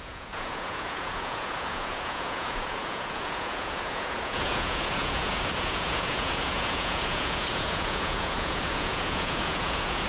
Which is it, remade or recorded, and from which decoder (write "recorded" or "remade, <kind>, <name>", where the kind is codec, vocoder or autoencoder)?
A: remade, vocoder, Vocos